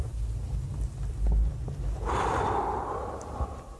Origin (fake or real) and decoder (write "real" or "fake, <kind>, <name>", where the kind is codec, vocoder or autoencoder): real